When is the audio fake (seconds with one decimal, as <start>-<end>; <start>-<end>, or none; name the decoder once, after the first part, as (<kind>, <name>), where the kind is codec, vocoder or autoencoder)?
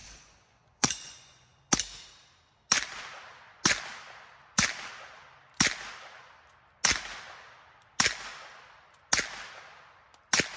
0.0-1.6 (vocoder, Vocos)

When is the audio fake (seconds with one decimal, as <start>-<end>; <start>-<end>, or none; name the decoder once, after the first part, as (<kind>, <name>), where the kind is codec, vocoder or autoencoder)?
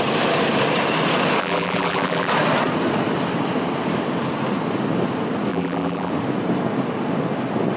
1.4-2.3 (vocoder, BigVGAN v2); 5.5-6.1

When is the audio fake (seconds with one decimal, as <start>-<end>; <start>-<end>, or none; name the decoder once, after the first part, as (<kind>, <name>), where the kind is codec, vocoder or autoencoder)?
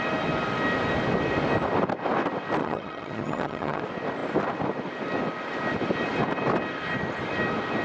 2.6-3.8 (vocoder, HiFi-GAN)